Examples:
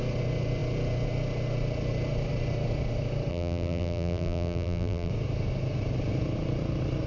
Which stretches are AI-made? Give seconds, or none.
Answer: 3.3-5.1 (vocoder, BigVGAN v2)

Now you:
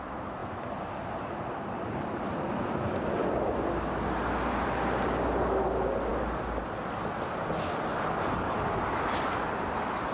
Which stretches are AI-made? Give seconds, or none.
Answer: none

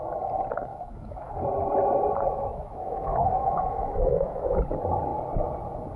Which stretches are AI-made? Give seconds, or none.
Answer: 0.7-1.3 (autoencoder, DAC-VAE); 2.3-4.6

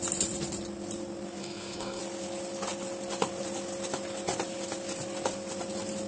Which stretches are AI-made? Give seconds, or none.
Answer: 1.4-2.0 (codec, SNAC)

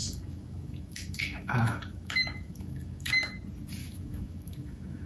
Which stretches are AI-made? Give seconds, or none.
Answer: 0.0-3.1 (autoencoder, DAC-VAE); 3.8-5.1

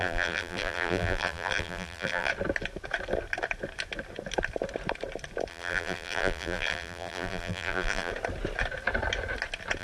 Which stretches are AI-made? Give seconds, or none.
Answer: 0.0-2.3 (vocoder, BigVGAN v2); 5.5-8.1

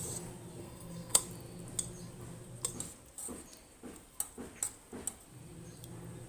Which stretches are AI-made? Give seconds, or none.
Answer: 0.6-1.2 (codec, SNAC)